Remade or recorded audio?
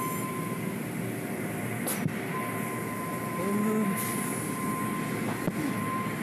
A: recorded